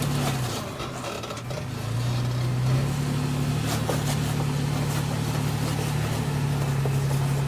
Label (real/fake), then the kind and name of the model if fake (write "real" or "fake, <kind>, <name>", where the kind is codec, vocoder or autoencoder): real